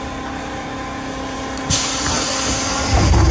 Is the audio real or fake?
real